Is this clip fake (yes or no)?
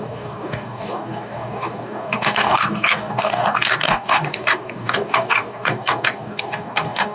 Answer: yes